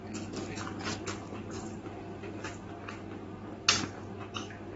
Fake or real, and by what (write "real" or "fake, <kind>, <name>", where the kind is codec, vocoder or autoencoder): real